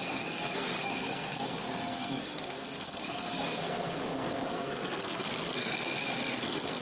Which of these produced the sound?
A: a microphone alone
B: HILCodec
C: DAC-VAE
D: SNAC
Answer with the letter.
D